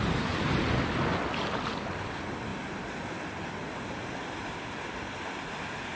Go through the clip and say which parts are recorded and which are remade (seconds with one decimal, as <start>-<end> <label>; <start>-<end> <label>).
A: 0.0-6.0 recorded